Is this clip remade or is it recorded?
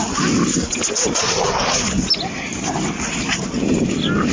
recorded